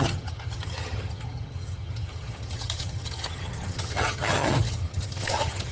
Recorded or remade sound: remade